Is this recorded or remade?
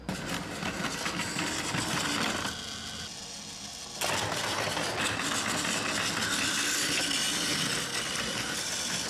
recorded